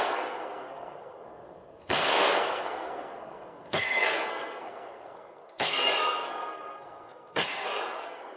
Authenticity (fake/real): fake